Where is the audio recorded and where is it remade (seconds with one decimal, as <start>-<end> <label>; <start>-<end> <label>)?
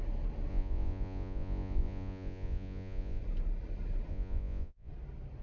0.0-0.5 recorded; 0.5-3.2 remade; 3.2-4.1 recorded; 4.1-4.9 remade; 4.9-5.4 recorded